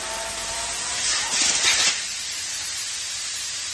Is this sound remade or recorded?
recorded